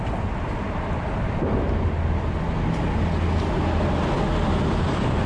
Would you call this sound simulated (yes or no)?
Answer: no